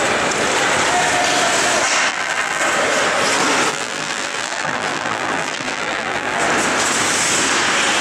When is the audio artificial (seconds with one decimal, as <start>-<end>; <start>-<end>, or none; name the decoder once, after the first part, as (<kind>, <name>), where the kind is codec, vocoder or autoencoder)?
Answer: 2.1-2.6 (vocoder, BigVGAN v2); 3.7-6.4